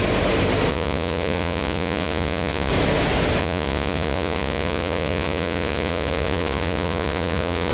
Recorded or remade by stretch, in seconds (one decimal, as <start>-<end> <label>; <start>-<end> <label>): 0.0-0.7 recorded; 0.7-2.7 remade; 2.7-3.4 recorded; 3.4-7.7 remade